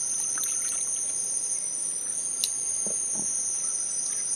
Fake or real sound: real